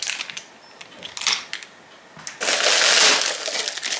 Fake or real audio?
real